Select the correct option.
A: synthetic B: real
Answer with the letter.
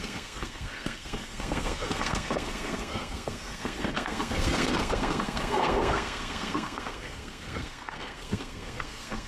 A